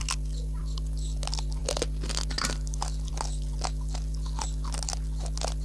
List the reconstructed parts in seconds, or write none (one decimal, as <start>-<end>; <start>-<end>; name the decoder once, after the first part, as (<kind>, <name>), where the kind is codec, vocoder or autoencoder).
none